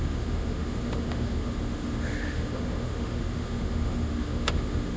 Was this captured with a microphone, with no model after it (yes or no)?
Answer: no